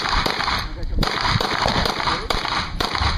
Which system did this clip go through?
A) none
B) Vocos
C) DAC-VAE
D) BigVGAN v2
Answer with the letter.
D